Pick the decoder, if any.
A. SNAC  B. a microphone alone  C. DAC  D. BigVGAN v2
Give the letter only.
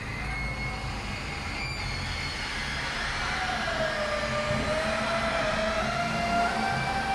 B